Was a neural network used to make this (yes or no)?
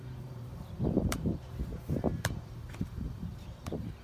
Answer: yes